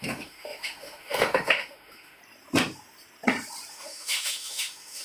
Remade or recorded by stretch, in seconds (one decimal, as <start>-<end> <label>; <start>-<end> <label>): 0.0-2.2 remade; 2.2-3.7 recorded; 3.7-5.0 remade